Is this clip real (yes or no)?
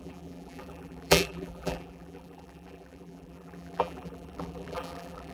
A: no